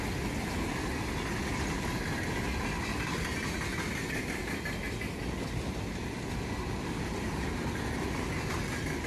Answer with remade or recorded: recorded